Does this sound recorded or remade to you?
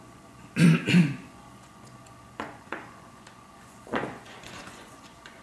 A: remade